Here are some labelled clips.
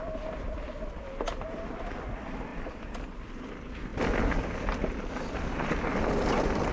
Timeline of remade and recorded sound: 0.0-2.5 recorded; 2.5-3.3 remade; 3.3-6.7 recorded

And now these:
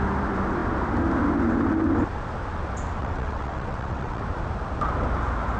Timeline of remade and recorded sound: 0.0-3.0 recorded; 3.0-4.2 remade; 4.2-5.6 recorded

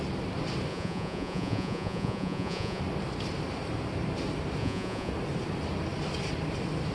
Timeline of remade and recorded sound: 0.0-0.7 recorded; 0.7-2.8 remade; 2.8-4.6 recorded; 4.6-5.1 remade; 5.1-6.9 recorded

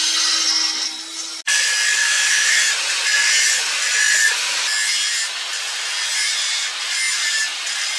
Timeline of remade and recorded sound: 0.0-2.0 recorded; 2.0-2.6 remade; 2.6-8.0 recorded

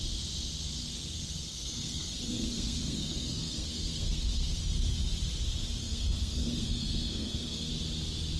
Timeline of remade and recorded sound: 0.0-0.8 recorded; 0.8-4.6 remade; 4.6-5.8 recorded; 5.8-7.7 remade; 7.7-8.4 recorded